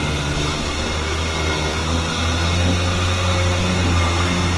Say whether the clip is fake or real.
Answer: real